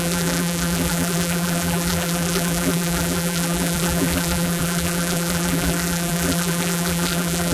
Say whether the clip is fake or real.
fake